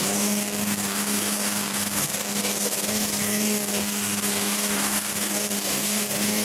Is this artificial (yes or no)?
yes